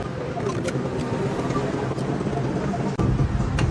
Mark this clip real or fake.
real